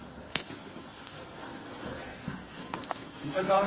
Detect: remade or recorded remade